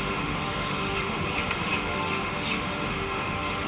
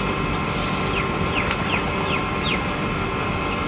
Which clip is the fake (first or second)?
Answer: first